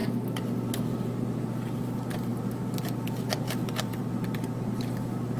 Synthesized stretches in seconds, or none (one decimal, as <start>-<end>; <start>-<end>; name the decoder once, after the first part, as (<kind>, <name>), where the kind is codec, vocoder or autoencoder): 0.0-0.7 (vocoder, BigVGAN v2); 3.9-5.4

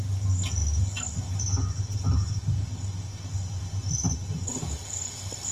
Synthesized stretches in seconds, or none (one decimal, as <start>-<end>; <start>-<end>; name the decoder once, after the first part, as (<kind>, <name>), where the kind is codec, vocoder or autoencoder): none

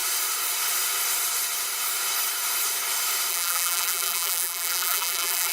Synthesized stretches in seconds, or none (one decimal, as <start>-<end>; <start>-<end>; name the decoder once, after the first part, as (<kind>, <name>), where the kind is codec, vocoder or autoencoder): 3.3-5.5 (vocoder, BigVGAN v2)